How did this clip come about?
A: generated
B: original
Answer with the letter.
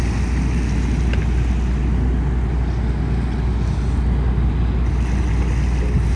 B